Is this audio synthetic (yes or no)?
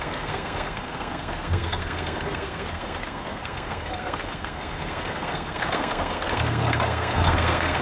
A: yes